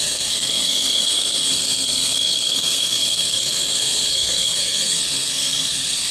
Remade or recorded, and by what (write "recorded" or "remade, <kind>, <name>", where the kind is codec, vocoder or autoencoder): remade, codec, SNAC